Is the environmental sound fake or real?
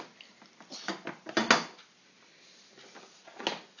real